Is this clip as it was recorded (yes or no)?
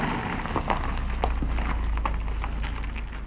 yes